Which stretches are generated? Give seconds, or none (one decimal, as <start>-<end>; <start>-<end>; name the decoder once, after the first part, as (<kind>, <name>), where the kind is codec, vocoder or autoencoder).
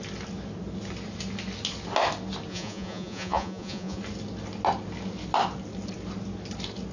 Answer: 2.5-4.0 (vocoder, Vocos)